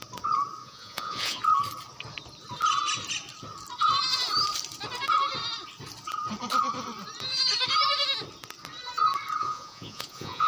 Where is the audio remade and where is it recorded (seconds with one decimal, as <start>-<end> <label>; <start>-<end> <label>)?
0.0-0.6 recorded; 0.6-1.4 remade; 1.4-9.4 recorded; 9.4-10.5 remade